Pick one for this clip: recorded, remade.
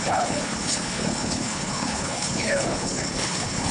remade